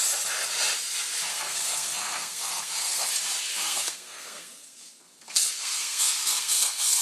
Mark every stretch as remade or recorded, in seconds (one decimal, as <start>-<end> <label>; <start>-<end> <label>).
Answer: 0.0-1.3 recorded; 1.3-3.1 remade; 3.1-3.5 recorded; 3.5-7.0 remade